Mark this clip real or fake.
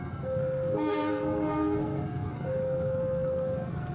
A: fake